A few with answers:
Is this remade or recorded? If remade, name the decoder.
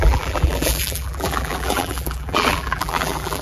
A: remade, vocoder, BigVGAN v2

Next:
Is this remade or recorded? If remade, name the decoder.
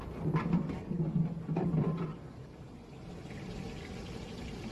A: recorded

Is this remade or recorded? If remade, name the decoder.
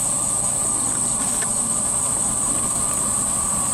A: recorded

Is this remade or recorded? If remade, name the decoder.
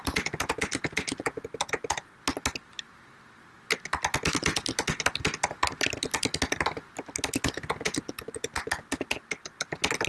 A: recorded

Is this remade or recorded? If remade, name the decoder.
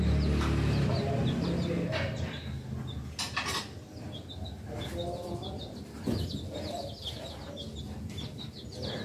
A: recorded